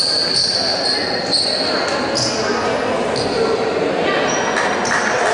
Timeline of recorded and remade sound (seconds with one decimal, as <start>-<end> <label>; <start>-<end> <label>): 0.0-5.3 recorded